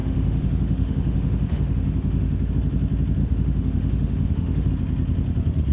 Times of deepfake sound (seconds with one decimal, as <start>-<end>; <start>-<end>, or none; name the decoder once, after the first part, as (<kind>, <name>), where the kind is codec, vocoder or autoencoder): 0.0-2.5 (autoencoder, DAC-VAE); 3.2-4.7

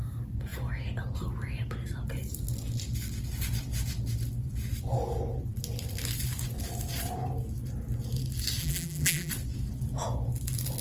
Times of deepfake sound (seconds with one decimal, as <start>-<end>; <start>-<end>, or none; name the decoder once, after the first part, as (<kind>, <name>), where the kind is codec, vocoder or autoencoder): 8.6-9.3 (vocoder, BigVGAN v2)

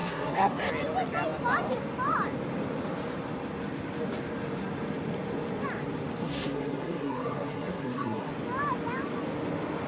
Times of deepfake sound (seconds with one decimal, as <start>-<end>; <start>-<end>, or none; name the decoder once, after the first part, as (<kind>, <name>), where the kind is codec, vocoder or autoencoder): 0.0-0.7 (codec, SNAC); 6.2-8.3

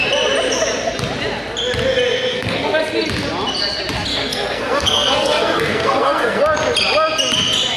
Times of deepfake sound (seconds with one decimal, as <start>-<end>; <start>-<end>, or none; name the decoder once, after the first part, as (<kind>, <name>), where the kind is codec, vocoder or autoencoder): 2.3-2.8 (codec, SNAC); 4.1-6.4

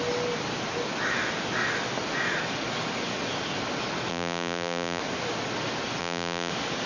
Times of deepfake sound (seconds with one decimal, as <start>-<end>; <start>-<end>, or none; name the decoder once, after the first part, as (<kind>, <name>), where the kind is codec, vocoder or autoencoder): 4.1-5.0 (vocoder, BigVGAN v2); 6.0-6.5

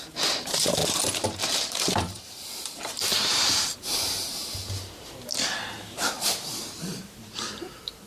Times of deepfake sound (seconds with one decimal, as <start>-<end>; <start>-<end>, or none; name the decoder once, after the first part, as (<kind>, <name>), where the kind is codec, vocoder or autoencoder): 0.0-4.4 (vocoder, BigVGAN v2); 5.3-8.1

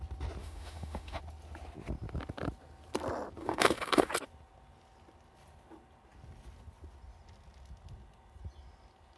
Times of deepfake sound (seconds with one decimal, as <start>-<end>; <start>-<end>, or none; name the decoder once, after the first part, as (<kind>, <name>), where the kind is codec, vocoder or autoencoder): 0.4-1.2 (autoencoder, DAC-VAE); 3.4-4.1